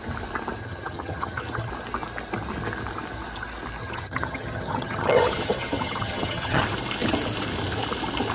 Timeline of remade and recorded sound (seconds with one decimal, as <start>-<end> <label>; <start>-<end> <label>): 0.0-0.6 recorded; 0.6-1.7 remade; 1.7-3.8 recorded; 3.8-6.6 remade; 6.6-8.3 recorded